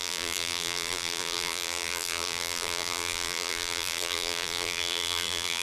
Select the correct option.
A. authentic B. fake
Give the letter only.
B